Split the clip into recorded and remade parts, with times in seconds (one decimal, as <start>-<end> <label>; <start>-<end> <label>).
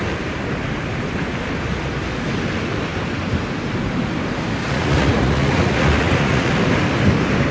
0.0-4.6 recorded; 4.6-6.6 remade; 6.6-7.5 recorded